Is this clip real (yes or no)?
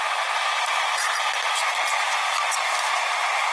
yes